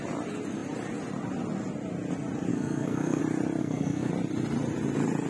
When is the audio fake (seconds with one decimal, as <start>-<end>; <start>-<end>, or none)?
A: 2.5-3.2; 3.6-4.1